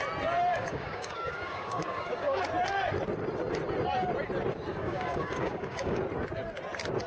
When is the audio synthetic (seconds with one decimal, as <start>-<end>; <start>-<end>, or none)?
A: 0.5-2.4; 4.7-6.0

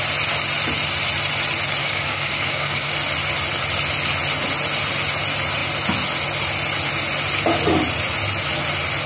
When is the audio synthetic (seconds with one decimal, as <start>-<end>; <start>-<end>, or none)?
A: 1.8-2.9

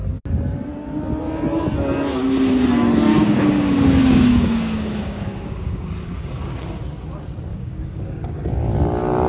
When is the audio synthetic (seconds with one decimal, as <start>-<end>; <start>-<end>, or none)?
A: 3.1-6.8; 7.5-8.4

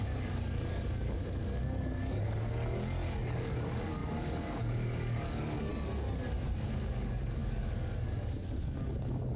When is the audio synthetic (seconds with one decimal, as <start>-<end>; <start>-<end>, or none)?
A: 0.0-5.7; 6.6-9.4

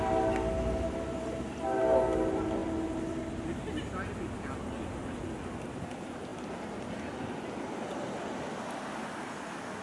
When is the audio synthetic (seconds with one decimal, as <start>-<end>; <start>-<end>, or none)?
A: none